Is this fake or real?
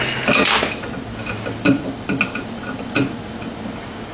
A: real